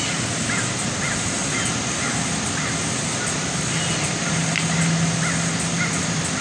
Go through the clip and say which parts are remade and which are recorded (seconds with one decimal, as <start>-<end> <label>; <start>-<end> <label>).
0.0-6.4 recorded